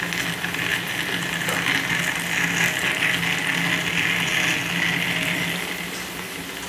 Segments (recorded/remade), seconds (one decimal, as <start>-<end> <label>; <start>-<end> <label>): 0.0-6.7 recorded